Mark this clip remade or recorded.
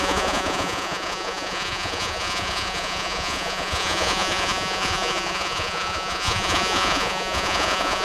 remade